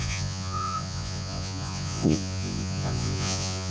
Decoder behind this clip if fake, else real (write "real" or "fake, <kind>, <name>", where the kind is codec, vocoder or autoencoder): fake, vocoder, Vocos